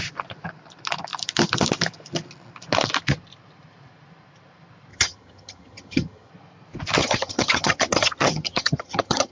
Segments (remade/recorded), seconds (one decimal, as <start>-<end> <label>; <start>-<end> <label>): 0.0-4.9 recorded; 4.9-6.3 remade; 6.3-7.0 recorded; 7.0-9.3 remade

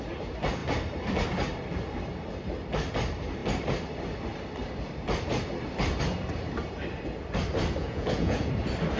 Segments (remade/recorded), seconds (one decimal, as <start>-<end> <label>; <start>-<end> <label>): 0.0-7.8 recorded; 7.8-8.5 remade; 8.5-9.0 recorded

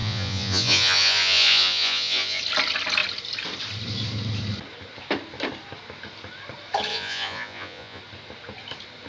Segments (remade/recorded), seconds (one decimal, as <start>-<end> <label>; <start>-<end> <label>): 0.0-2.4 remade; 2.4-6.9 recorded; 6.9-8.0 remade; 8.0-9.1 recorded

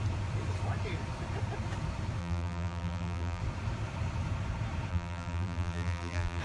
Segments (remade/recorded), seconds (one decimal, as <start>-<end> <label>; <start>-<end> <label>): 0.0-2.2 recorded; 2.2-3.4 remade; 3.4-4.9 recorded; 4.9-6.4 remade

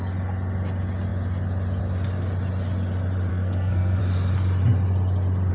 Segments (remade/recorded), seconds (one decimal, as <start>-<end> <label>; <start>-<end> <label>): 0.0-3.3 recorded; 3.3-4.0 remade; 4.0-5.5 recorded

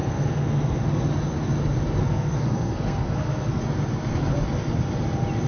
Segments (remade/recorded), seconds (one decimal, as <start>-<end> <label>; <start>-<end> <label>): 0.0-0.8 remade; 0.8-2.0 recorded; 2.0-3.6 remade; 3.6-5.5 recorded

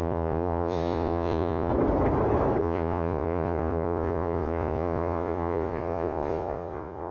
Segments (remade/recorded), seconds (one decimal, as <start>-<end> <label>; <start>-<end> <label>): 0.0-1.7 remade; 1.7-2.6 recorded; 2.6-7.1 remade